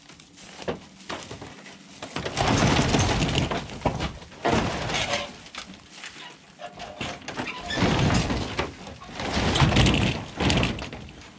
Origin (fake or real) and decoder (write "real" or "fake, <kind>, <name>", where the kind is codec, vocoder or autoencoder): real